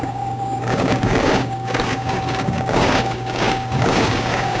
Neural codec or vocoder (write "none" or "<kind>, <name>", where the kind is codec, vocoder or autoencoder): codec, DAC